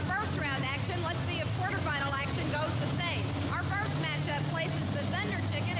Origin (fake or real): real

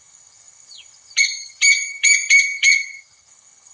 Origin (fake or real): fake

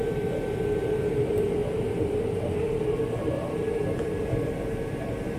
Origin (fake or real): real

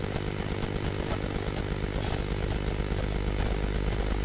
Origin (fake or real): real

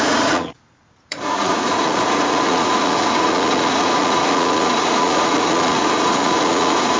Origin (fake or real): fake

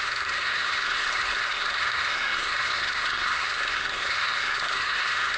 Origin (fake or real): fake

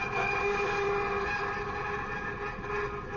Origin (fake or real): real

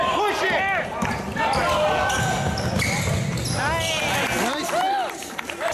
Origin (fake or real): real